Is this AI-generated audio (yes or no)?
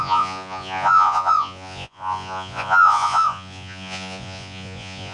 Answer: yes